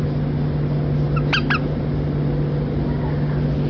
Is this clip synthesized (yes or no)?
no